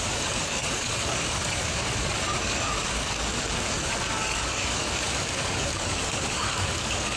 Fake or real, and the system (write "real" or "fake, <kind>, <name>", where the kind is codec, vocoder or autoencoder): fake, codec, DAC